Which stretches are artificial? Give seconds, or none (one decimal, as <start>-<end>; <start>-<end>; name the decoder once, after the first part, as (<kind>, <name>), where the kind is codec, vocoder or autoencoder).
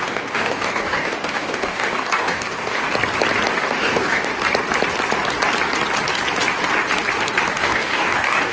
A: 0.0-2.8 (codec, DAC); 3.5-4.3; 7.6-8.5